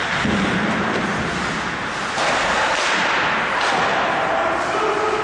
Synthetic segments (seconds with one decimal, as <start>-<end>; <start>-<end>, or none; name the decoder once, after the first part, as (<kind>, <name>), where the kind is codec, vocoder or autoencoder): none